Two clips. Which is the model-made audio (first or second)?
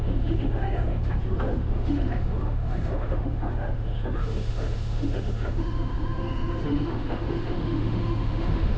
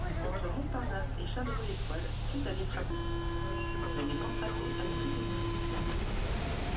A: first